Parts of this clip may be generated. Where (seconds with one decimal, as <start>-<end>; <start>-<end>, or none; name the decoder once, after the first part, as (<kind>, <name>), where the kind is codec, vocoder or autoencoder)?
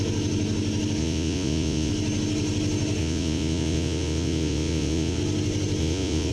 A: 1.0-1.9 (vocoder, Vocos); 3.0-5.2; 5.8-6.3